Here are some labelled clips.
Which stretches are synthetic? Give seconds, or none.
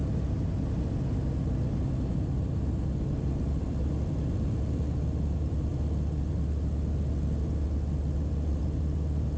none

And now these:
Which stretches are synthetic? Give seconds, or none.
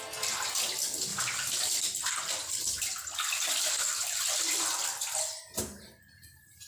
1.1-4.6 (vocoder, BigVGAN v2)